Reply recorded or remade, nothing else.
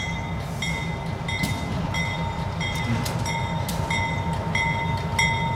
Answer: recorded